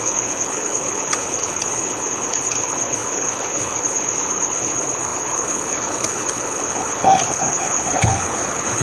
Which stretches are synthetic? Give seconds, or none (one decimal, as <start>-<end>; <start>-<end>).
0.0-8.8